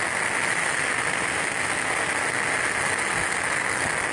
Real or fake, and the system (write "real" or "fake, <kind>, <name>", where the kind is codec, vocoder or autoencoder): real